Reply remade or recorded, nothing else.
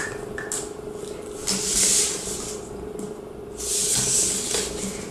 recorded